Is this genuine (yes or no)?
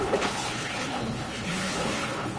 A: no